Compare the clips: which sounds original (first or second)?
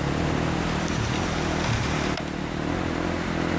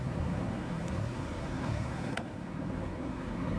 first